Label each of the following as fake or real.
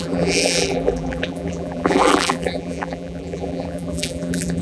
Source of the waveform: fake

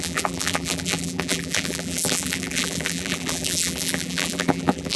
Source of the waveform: fake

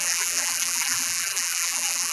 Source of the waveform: fake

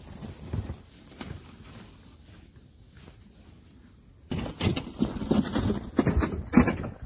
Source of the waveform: real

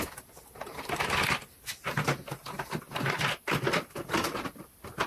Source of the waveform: fake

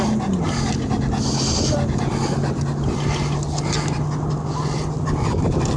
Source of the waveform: real